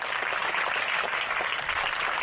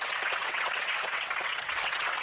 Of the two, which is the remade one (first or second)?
second